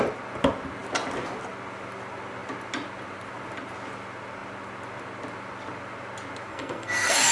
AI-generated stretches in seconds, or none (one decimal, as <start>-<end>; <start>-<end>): 6.5-7.3